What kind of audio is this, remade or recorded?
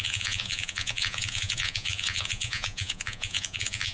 remade